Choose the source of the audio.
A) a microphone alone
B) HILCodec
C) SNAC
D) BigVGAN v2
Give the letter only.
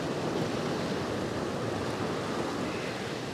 A